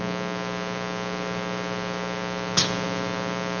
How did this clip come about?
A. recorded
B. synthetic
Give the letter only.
A